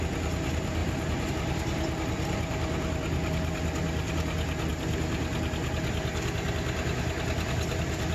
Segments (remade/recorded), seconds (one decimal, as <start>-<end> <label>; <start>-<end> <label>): 0.0-0.8 recorded; 0.8-1.3 remade; 1.3-8.1 recorded